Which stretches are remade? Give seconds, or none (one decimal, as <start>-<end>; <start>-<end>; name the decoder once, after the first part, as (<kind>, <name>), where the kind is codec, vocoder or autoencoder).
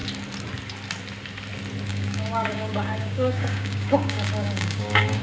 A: 1.9-5.2 (codec, DAC)